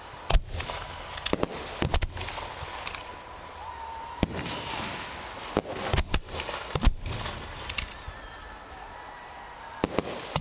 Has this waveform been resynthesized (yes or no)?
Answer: yes